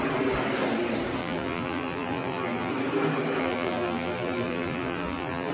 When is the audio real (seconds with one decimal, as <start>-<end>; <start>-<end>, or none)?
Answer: 0.0-1.2; 2.7-3.4